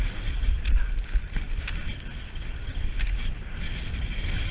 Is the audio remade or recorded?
recorded